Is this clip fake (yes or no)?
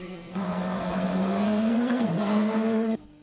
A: yes